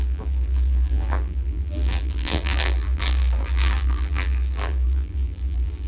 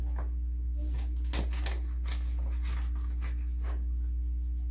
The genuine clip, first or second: second